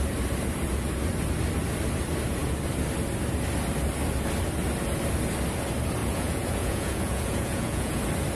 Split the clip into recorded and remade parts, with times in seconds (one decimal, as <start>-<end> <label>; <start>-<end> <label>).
0.0-6.0 recorded; 6.0-8.0 remade; 8.0-8.4 recorded